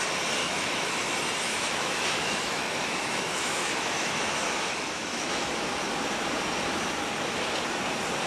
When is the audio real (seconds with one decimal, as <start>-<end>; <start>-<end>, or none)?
0.0-0.4; 1.1-1.5; 5.6-8.3